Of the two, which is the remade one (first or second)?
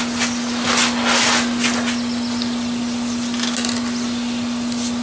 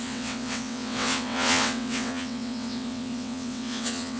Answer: second